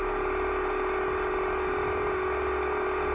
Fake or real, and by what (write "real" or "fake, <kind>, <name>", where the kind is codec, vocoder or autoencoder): real